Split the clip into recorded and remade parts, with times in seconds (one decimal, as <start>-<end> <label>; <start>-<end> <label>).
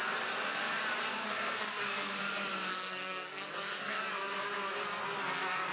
0.0-1.2 recorded; 1.2-2.2 remade; 2.2-2.7 recorded; 2.7-4.0 remade; 4.0-5.7 recorded